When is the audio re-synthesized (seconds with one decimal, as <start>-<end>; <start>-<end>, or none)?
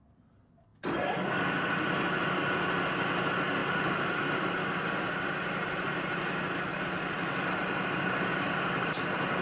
3.6-4.2; 6.7-9.0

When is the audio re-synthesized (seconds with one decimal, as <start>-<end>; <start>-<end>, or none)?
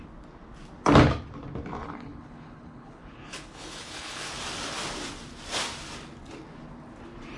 1.8-4.3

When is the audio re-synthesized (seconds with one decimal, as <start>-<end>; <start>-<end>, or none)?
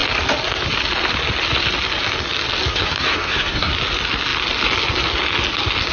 2.7-3.7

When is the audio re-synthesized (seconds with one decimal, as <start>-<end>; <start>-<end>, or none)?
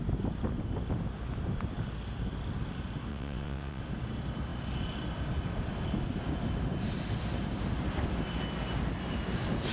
3.1-3.8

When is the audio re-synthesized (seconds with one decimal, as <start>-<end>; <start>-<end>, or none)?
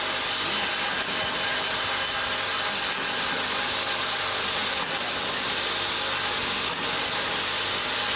none